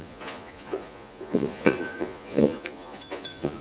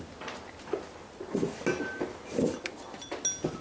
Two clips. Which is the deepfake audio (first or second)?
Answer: first